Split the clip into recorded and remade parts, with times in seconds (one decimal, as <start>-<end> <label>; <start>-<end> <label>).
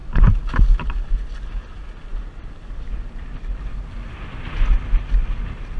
0.0-5.8 recorded